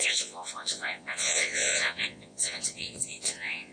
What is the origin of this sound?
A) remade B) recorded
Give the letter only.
A